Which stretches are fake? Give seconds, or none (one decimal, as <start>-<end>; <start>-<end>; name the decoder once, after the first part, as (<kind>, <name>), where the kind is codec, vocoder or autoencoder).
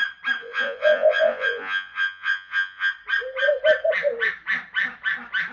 0.4-2.9 (vocoder, Vocos)